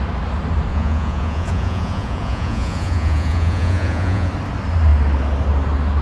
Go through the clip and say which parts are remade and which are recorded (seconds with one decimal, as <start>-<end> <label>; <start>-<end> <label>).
0.0-0.7 recorded; 0.7-4.3 remade; 4.3-6.0 recorded